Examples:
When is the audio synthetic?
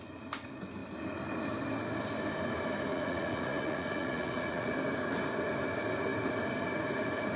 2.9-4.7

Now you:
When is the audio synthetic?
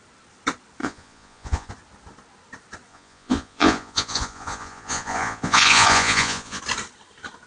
0.8-1.7; 2.9-6.6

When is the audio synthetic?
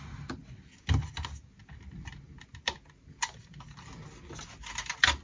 none